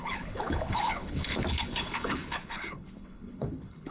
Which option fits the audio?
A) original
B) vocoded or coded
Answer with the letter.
B